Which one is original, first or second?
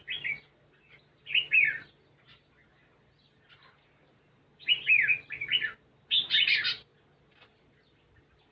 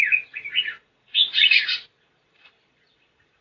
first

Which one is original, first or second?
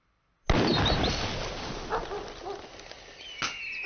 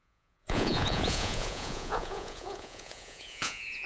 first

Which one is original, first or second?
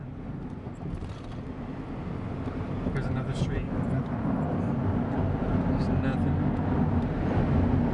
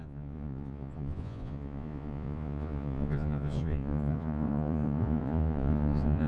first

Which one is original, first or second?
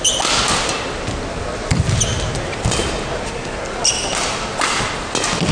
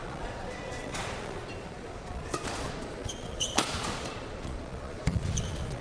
first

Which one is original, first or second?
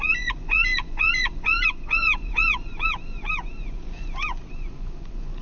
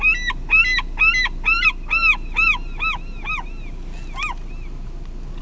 second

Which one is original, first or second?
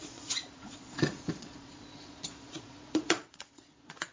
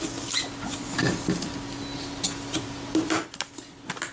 second